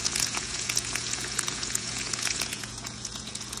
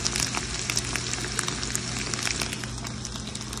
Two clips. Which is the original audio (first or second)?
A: second